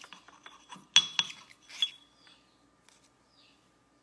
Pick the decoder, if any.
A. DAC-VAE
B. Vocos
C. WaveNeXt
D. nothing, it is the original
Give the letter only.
D